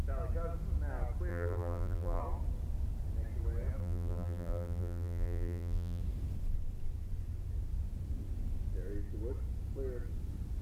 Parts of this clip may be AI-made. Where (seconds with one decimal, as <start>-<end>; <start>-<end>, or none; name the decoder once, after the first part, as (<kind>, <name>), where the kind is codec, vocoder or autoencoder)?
1.3-2.2 (vocoder, BigVGAN v2); 3.8-6.0